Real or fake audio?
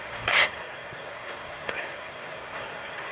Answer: fake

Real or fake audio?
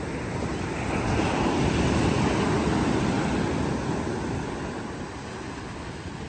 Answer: real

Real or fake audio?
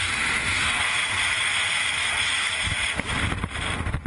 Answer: real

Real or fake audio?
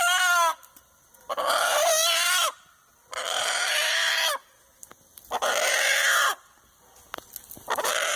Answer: real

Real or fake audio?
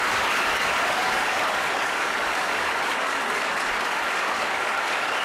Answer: fake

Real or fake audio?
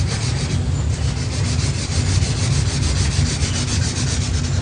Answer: real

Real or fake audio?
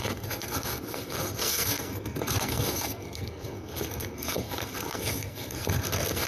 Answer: fake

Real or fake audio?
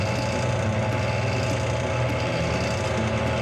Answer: real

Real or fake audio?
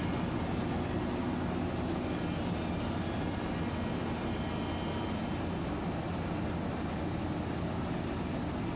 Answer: real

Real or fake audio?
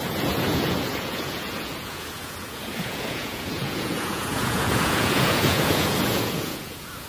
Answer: fake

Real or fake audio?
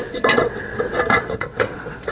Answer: fake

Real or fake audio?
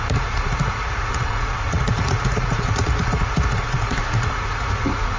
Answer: fake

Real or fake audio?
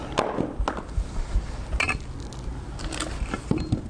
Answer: real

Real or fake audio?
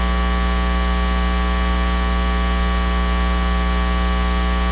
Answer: real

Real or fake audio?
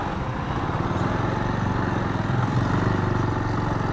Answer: real